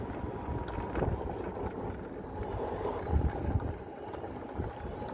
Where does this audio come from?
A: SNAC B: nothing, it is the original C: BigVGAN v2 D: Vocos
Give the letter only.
C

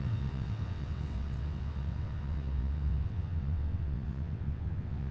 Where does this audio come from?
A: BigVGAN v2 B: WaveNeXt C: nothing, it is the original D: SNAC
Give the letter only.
B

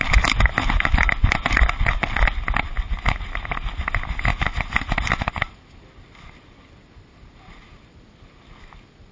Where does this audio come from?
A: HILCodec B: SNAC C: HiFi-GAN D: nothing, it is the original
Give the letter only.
D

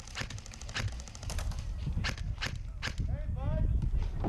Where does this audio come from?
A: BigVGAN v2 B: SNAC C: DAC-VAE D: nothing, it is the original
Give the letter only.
D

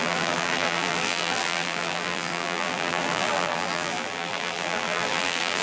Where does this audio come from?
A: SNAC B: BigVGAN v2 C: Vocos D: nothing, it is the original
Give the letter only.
B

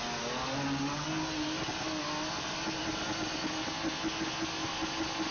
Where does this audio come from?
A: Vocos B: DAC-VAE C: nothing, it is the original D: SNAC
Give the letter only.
C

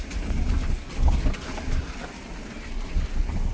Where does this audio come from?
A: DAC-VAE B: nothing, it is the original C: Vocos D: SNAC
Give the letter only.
B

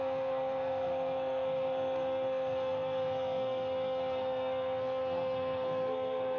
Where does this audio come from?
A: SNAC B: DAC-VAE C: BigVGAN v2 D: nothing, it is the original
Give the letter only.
A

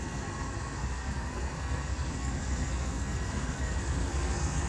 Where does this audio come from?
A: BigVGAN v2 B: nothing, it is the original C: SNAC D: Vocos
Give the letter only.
C